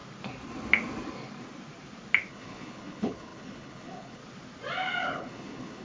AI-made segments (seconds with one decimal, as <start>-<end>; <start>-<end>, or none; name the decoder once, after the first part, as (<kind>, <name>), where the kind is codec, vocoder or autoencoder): 2.3-4.2 (codec, HILCodec); 5.0-5.8